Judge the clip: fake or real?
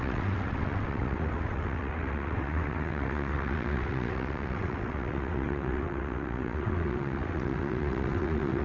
fake